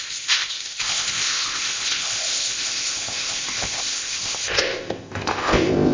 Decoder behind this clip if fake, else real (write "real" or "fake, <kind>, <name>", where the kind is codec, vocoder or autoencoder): fake, codec, ZipCodec